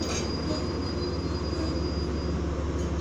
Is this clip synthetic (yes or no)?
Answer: no